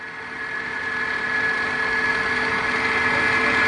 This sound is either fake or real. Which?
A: real